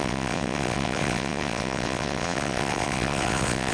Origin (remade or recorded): remade